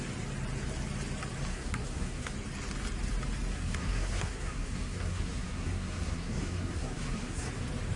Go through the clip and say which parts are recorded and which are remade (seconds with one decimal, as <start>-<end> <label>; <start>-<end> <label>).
0.0-1.5 recorded; 1.5-2.3 remade; 2.3-3.5 recorded; 3.5-7.5 remade; 7.5-8.0 recorded